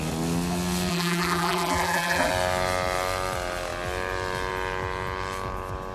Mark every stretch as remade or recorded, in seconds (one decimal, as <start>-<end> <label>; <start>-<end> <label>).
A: 0.0-0.9 recorded; 0.9-2.3 remade; 2.3-5.9 recorded